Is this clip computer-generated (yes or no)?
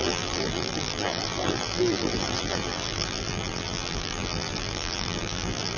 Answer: yes